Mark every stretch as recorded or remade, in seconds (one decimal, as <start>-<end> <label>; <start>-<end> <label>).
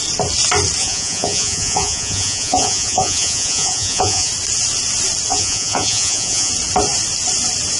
0.0-0.8 recorded; 0.8-4.3 remade; 4.3-5.3 recorded; 5.3-6.5 remade; 6.5-7.8 recorded